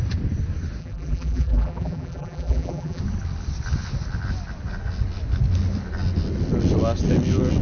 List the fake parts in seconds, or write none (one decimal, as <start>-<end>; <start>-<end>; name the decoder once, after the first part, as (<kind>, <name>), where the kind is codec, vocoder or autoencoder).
0.8-3.0 (vocoder, BigVGAN v2)